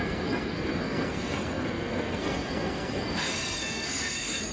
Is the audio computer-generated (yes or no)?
yes